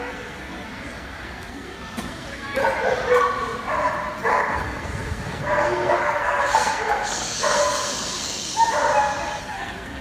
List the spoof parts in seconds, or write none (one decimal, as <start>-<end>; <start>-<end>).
0.0-2.6; 4.3-8.5; 9.4-10.0